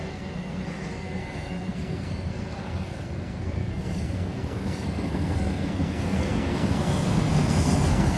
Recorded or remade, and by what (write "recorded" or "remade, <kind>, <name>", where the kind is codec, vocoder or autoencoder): remade, codec, SNAC